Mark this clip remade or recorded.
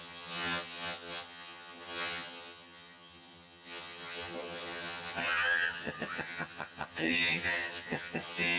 remade